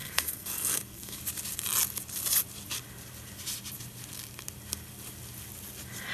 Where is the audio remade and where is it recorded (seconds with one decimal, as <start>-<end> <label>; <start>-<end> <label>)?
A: 0.0-1.2 remade; 1.2-6.1 recorded

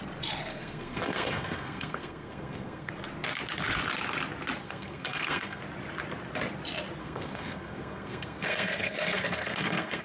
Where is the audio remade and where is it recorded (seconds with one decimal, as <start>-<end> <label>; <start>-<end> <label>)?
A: 0.0-0.5 recorded; 0.5-2.9 remade; 2.9-4.6 recorded; 4.6-5.6 remade; 5.6-7.0 recorded; 7.0-10.0 remade

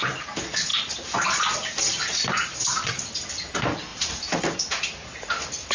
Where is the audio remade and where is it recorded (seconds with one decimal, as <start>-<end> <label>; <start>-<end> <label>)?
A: 0.0-5.7 recorded

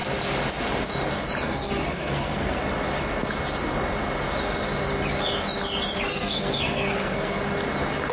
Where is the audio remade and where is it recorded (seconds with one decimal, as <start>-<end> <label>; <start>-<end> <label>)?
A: 0.0-1.4 recorded; 1.4-2.6 remade; 2.6-6.1 recorded; 6.1-7.4 remade; 7.4-8.1 recorded